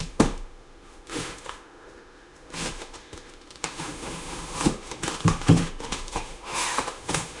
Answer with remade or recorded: remade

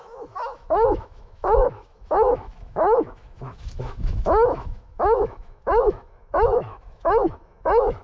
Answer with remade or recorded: remade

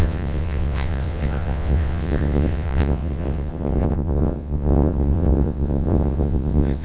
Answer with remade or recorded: remade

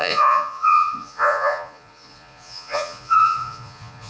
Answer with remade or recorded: remade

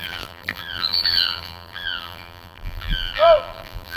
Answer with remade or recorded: remade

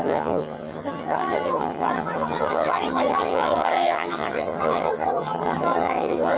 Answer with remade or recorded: remade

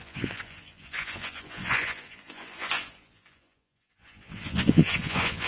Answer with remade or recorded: remade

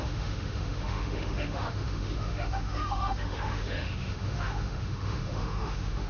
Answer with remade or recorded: remade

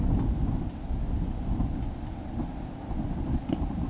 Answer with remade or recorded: recorded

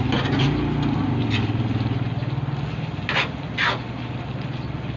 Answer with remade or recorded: recorded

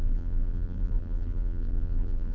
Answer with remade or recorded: remade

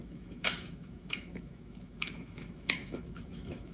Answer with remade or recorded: remade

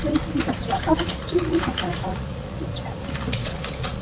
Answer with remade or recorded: remade